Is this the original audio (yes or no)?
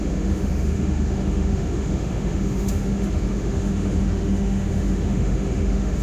no